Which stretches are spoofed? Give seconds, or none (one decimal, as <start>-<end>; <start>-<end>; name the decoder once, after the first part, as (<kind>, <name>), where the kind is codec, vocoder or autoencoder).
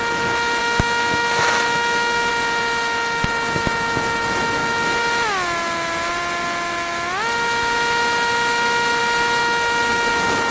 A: 0.6-2.3 (autoencoder, DAC-VAE); 9.4-10.1